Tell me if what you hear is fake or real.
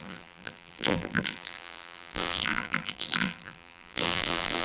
fake